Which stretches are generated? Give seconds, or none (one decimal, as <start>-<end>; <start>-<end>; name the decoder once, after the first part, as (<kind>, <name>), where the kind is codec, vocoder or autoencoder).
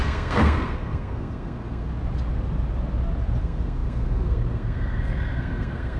0.0-1.9 (codec, SNAC); 3.4-6.0